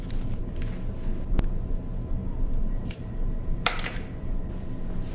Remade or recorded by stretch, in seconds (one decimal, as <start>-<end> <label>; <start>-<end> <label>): 0.0-2.2 recorded; 2.2-4.4 remade; 4.4-5.1 recorded